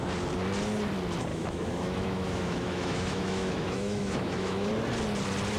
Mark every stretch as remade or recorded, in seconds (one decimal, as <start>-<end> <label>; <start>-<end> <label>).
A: 0.0-1.3 recorded; 1.3-4.7 remade; 4.7-5.6 recorded